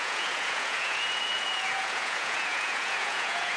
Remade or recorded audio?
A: remade